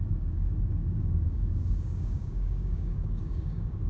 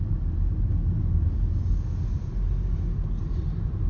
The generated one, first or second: first